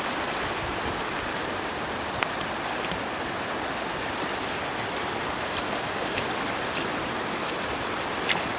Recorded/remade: recorded